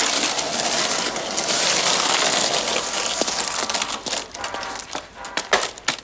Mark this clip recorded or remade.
remade